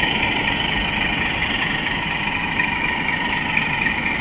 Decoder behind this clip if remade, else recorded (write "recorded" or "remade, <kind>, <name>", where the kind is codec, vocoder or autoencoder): recorded